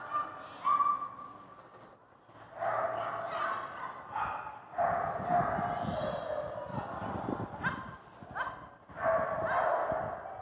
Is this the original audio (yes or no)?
yes